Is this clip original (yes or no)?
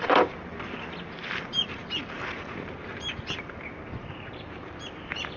no